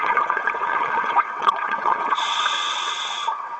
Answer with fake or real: fake